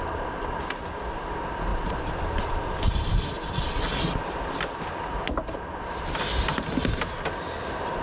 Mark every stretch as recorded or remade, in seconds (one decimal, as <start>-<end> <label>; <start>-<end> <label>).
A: 0.0-1.7 recorded; 1.7-2.9 remade; 2.9-8.0 recorded